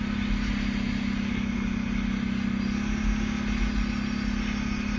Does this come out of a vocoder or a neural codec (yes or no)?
no